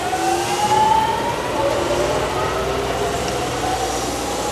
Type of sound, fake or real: real